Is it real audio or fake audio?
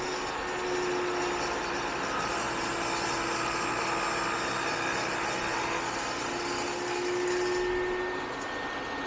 real